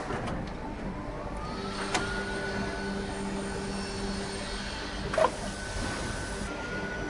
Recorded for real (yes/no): yes